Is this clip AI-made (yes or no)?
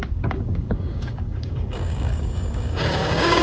yes